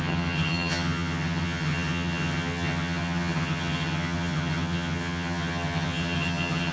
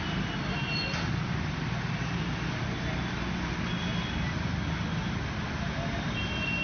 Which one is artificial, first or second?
first